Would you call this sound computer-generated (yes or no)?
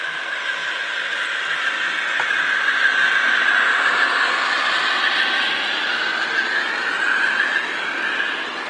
no